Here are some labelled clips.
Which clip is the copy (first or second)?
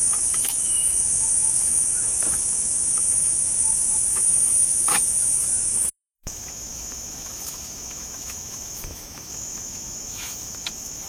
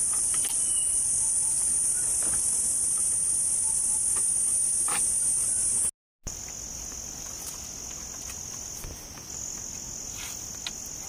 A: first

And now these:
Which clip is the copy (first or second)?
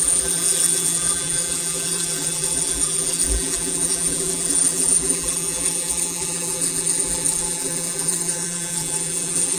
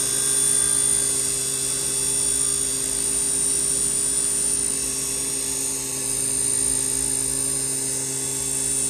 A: first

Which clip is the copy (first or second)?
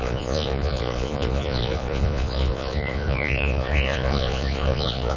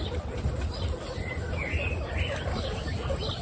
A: first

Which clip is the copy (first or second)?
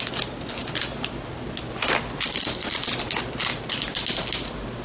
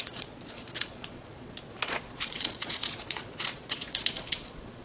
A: second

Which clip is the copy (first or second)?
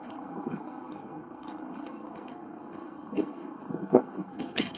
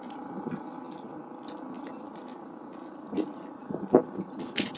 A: first